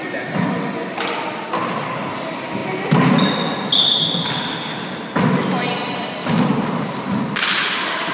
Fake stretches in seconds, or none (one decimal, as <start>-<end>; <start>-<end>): none